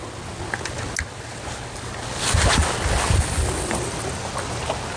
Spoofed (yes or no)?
no